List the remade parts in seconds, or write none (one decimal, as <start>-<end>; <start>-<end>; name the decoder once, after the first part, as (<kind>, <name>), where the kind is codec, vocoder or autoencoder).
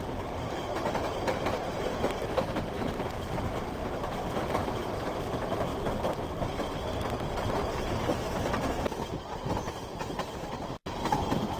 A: 0.0-3.8 (vocoder, BigVGAN v2); 4.9-5.7; 9.1-11.6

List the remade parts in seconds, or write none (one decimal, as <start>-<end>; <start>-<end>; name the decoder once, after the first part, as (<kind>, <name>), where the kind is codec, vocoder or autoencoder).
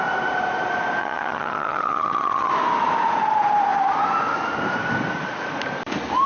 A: 1.0-2.5 (vocoder, HiFi-GAN)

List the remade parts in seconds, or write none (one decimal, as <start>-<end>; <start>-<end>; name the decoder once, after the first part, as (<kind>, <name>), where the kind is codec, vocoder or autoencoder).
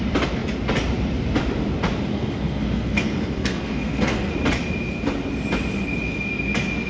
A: 2.1-4.3 (codec, SNAC)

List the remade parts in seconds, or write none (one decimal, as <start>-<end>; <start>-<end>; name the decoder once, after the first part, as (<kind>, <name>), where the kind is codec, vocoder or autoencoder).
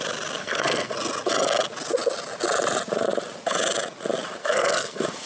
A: 0.4-0.9 (codec, SNAC); 4.4-5.3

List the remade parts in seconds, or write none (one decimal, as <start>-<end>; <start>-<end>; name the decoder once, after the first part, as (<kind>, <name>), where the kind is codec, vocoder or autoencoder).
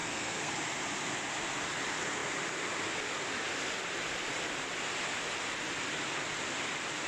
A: 0.0-0.5 (codec, SNAC)